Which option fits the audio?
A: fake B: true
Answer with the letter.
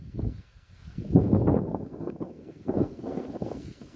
A